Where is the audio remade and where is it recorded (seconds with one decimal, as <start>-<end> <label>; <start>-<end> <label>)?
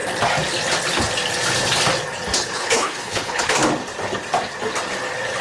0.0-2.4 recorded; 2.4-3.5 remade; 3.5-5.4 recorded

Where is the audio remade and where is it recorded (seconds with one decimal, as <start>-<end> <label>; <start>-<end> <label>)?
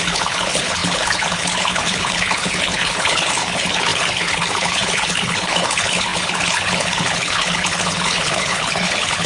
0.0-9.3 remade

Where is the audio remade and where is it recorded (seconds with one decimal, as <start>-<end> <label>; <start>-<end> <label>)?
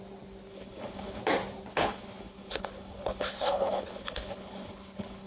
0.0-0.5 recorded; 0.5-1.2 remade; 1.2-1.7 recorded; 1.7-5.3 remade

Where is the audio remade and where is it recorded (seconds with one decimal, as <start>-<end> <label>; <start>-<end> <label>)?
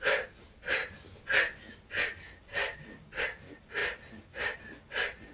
0.0-5.3 recorded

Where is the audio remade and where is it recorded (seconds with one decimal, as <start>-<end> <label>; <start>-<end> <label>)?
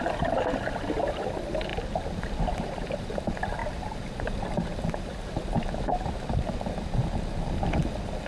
0.0-8.3 recorded